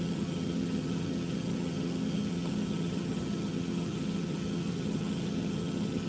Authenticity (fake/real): fake